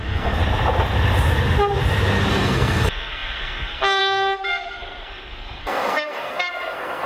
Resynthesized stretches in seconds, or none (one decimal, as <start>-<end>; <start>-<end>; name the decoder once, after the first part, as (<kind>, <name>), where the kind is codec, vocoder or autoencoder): 0.0-0.4 (codec, SNAC); 2.3-7.1